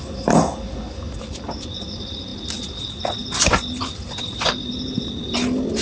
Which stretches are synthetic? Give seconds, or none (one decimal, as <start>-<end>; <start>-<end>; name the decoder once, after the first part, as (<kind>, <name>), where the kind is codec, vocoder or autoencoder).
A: none